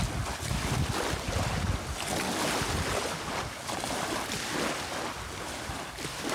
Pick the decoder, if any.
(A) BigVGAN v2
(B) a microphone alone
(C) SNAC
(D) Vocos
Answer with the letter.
B